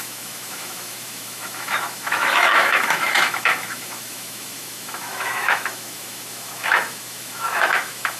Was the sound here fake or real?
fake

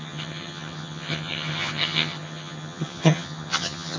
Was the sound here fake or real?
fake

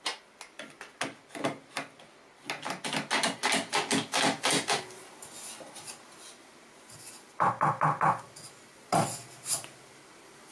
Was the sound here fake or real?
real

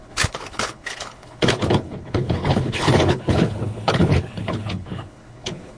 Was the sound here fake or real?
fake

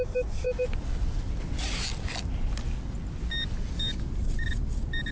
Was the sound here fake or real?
real